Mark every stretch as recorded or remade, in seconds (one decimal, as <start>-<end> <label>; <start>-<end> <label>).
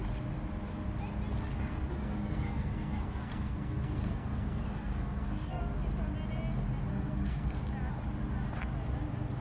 0.0-1.5 recorded; 1.5-5.6 remade; 5.6-6.9 recorded; 6.9-7.6 remade; 7.6-9.4 recorded